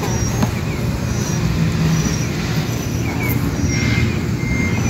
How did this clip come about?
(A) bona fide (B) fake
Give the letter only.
A